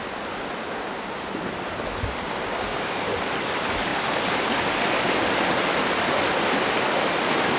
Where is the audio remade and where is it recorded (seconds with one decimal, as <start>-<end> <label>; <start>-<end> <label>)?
0.0-2.5 recorded; 2.5-3.1 remade; 3.1-7.6 recorded